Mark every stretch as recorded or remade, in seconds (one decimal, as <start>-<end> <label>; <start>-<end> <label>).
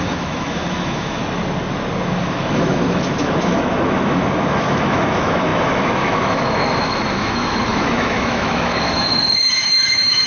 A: 0.0-1.2 remade; 1.2-2.2 recorded; 2.2-10.3 remade